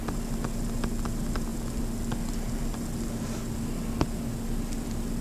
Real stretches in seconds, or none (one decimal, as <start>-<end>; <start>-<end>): 0.0-5.2